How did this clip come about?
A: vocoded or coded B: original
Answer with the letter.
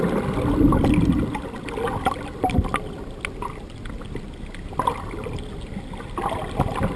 B